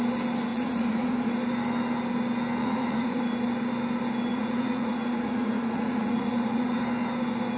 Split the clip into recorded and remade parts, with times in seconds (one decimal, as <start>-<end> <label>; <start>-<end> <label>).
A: 0.0-0.5 recorded; 0.5-1.3 remade; 1.3-2.6 recorded; 2.6-3.2 remade; 3.2-4.3 recorded; 4.3-6.8 remade; 6.8-7.6 recorded